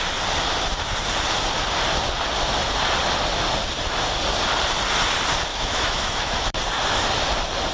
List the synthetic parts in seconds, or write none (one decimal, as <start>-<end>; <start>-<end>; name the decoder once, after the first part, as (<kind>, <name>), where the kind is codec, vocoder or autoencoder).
5.5-6.6 (autoencoder, DAC-VAE)